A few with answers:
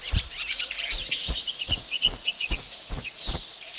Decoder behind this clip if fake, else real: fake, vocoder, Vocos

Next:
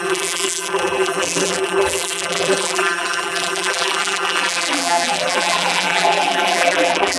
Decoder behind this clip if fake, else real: fake, vocoder, BigVGAN v2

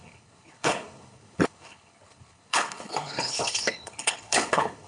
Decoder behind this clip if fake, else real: fake, codec, HILCodec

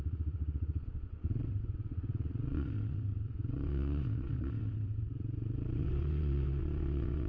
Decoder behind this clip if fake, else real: fake, vocoder, WaveNeXt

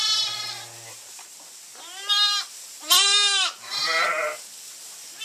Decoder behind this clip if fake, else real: real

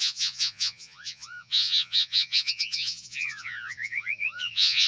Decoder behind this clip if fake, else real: fake, vocoder, Vocos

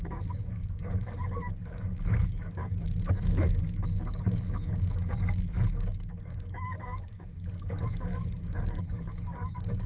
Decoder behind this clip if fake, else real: fake, codec, DAC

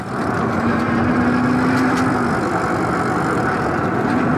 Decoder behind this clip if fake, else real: real